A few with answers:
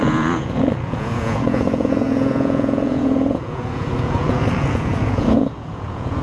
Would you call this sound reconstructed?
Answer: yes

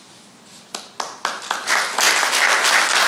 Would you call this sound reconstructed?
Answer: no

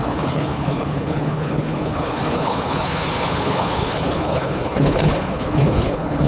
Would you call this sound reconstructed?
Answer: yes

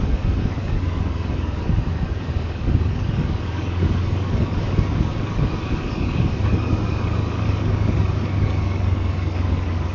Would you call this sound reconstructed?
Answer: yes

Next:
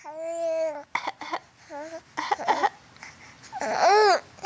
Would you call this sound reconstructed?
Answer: no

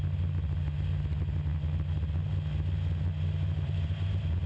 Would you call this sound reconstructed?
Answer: no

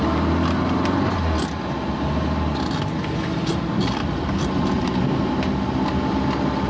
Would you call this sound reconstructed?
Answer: no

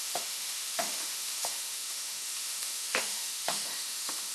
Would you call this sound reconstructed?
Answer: yes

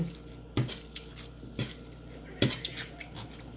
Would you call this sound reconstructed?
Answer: no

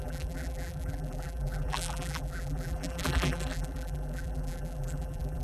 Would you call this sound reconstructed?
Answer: yes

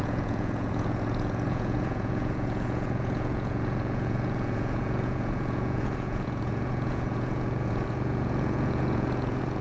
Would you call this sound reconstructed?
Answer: yes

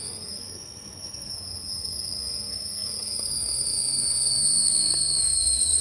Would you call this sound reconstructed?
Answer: yes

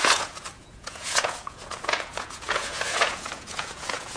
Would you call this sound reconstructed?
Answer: yes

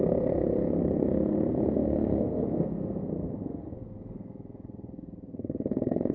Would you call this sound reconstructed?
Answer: yes